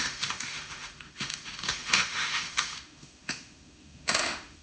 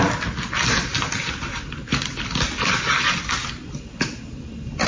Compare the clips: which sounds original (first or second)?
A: second